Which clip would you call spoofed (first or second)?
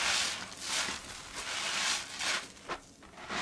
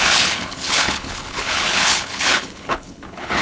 second